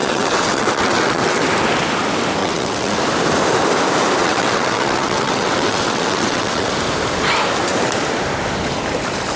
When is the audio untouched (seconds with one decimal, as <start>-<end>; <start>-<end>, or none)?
1.4-2.4; 3.0-4.2; 6.7-9.4